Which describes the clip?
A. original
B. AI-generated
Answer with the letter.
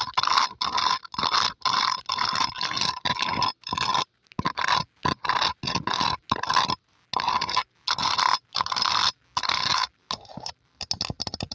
A